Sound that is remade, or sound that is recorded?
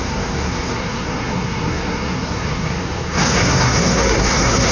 remade